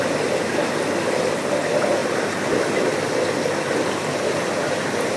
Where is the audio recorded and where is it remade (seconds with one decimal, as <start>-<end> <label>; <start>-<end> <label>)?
0.0-5.2 recorded